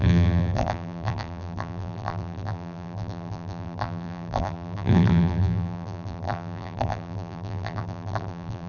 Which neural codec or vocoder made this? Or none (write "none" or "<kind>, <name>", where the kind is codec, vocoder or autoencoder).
vocoder, BigVGAN v2